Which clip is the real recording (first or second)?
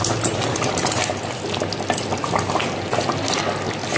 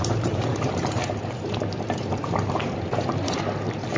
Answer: first